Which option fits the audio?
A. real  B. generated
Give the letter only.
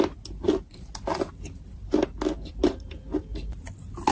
A